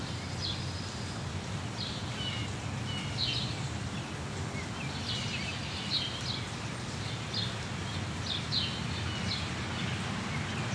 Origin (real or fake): real